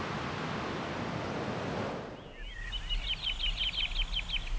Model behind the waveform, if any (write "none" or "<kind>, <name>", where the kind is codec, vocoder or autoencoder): none